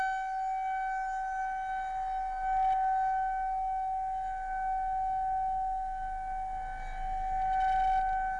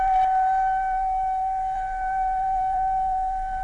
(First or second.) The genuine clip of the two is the first